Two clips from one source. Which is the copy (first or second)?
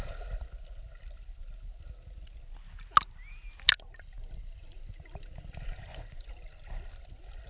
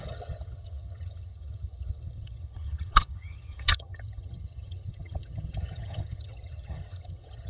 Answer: second